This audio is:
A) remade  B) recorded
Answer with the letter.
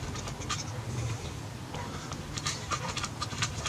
B